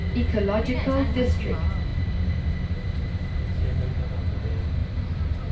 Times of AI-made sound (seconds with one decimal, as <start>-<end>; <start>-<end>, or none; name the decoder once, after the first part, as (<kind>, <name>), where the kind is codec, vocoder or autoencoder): 1.9-4.1 (vocoder, BigVGAN v2); 4.8-5.5

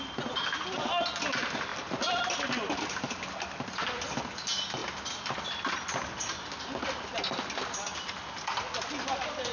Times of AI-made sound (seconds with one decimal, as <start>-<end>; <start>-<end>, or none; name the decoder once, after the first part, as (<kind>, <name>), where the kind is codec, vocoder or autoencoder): none

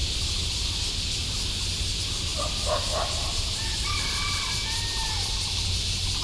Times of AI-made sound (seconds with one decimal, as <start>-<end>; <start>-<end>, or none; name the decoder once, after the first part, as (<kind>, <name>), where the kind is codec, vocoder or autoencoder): 0.0-1.2 (vocoder, BigVGAN v2)

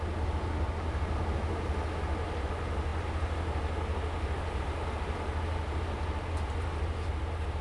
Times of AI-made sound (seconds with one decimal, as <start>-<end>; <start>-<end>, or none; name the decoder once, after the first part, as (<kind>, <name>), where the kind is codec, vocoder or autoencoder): none

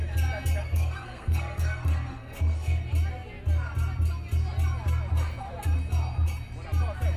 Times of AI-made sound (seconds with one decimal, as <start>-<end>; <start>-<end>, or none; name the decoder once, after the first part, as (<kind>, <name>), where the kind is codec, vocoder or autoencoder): 0.6-2.8 (codec, SNAC)

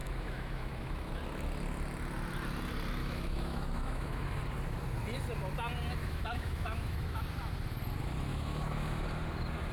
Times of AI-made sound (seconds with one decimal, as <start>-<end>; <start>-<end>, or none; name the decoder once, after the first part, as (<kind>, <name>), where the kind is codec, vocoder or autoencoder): 0.0-1.1 (autoencoder, DAC-VAE); 3.0-4.4; 6.0-7.2; 8.3-9.0

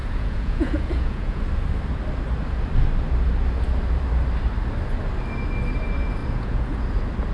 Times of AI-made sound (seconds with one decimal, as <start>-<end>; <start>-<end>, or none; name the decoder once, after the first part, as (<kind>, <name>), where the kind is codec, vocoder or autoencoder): 0.0-1.4 (vocoder, Vocos); 6.2-6.8

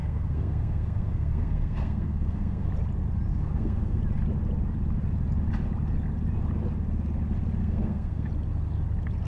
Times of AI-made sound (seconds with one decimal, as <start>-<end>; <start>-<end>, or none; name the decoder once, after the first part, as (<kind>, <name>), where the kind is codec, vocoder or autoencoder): 0.0-2.7 (codec, SNAC); 3.3-4.0; 7.6-8.3